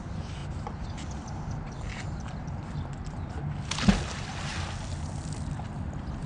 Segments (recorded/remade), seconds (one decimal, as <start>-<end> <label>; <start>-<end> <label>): 0.0-6.3 recorded